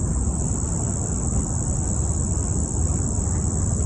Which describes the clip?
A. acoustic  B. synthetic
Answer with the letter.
A